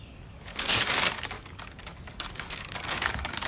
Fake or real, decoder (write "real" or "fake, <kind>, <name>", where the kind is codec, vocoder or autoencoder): fake, codec, DAC